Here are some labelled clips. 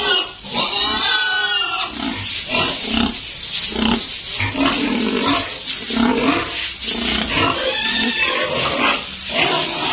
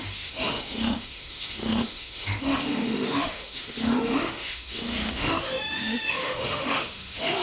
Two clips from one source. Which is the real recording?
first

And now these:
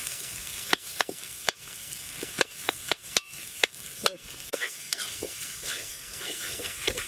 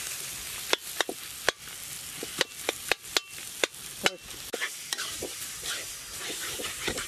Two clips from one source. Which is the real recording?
second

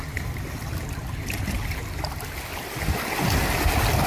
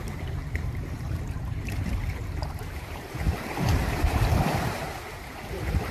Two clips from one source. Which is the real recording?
first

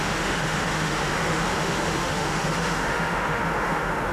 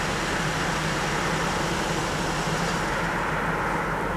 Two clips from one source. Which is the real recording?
second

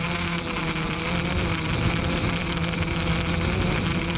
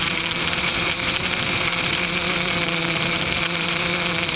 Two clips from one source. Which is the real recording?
first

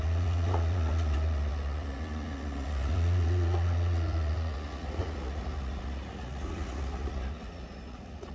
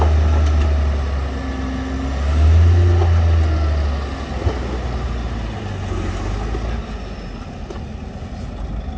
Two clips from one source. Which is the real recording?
second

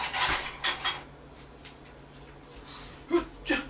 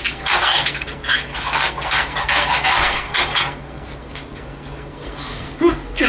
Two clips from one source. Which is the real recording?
first